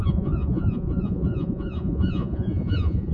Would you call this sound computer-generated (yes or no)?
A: yes